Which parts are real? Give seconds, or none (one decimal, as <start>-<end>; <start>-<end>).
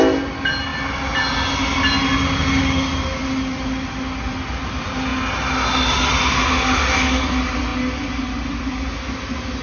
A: 0.0-9.6